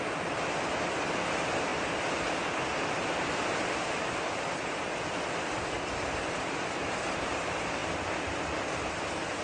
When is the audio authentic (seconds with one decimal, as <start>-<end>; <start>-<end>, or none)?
0.0-9.4